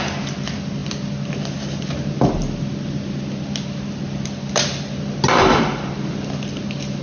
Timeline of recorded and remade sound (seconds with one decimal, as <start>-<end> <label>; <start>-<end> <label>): 0.0-7.0 recorded